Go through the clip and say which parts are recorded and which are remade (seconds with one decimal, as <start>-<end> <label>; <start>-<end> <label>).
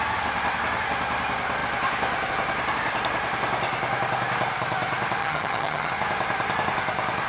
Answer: 0.0-5.2 recorded; 5.2-5.9 remade; 5.9-7.3 recorded